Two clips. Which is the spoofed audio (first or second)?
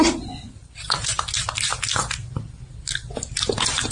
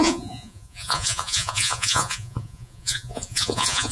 second